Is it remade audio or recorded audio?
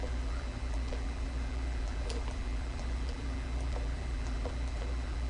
remade